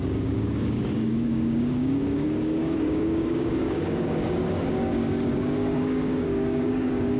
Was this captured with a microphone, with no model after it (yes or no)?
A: no